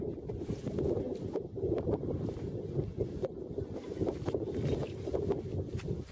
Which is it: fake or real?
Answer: real